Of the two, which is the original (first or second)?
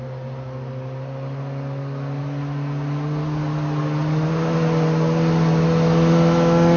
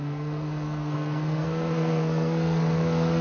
first